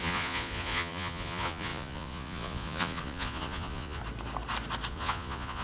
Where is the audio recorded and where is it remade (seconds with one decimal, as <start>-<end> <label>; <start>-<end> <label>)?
0.0-4.0 remade; 4.0-4.9 recorded; 4.9-5.6 remade